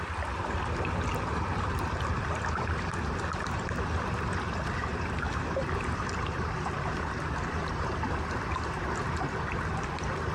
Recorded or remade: remade